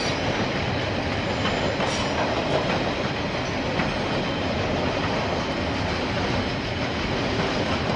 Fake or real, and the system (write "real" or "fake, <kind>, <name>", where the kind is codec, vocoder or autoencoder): real